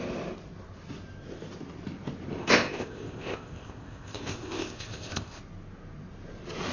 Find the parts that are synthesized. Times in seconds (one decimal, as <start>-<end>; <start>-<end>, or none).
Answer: 2.4-5.4